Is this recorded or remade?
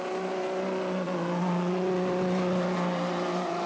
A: recorded